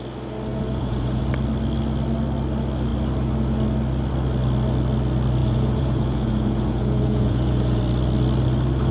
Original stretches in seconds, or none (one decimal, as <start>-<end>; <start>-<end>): 0.0-0.5; 1.2-5.4; 7.8-8.9